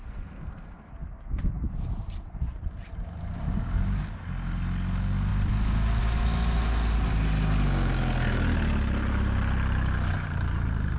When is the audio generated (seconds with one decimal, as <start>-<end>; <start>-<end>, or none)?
0.0-0.9